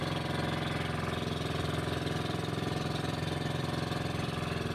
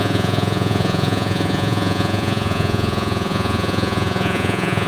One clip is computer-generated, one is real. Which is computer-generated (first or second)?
second